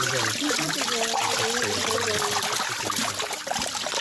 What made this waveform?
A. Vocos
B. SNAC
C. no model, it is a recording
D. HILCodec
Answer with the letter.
C